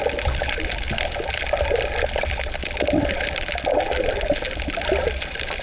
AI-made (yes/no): no